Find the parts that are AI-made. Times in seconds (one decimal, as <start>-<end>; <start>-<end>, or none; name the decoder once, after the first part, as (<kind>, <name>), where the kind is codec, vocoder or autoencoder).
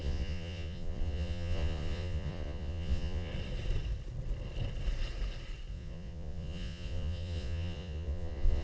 0.0-3.3 (vocoder, Vocos); 5.7-8.6